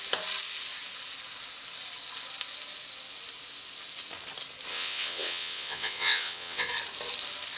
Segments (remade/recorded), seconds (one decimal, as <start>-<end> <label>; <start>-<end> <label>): 0.0-4.7 recorded; 4.7-6.7 remade; 6.7-7.6 recorded